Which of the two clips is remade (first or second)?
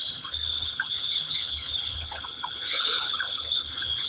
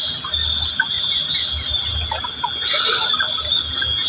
first